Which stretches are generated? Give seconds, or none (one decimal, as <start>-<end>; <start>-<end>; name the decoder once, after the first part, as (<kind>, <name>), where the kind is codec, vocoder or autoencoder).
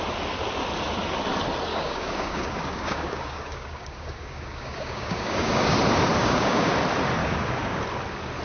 1.7-5.8 (codec, DAC); 6.2-6.7; 7.2-7.8